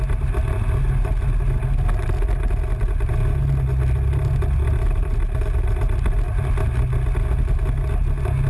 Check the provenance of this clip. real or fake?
real